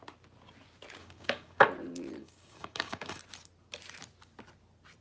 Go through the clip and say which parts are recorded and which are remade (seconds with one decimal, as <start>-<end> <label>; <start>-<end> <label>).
0.0-1.0 recorded; 1.0-1.6 remade; 1.6-2.2 recorded; 2.2-3.2 remade; 3.2-5.0 recorded